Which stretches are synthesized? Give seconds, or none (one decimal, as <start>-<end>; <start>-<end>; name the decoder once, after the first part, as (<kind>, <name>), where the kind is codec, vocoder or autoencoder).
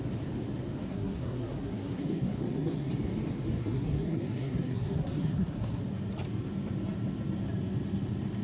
0.9-2.9 (codec, SNAC); 3.6-5.8